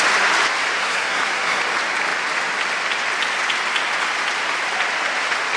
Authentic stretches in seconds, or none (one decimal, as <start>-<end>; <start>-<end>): 0.0-0.8; 1.6-5.6